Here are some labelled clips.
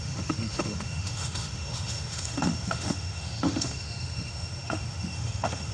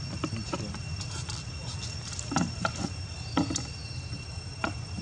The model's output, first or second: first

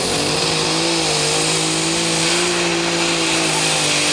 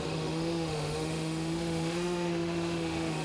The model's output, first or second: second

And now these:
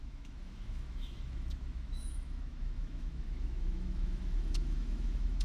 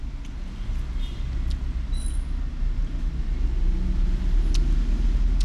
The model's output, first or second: first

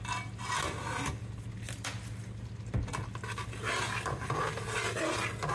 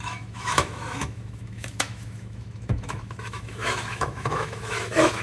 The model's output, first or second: second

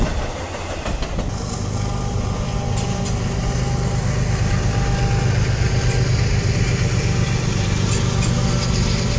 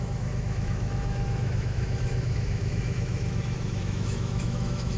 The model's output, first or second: second